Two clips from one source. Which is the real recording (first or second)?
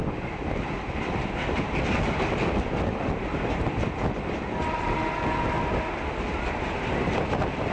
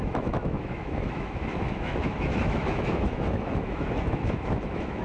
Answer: first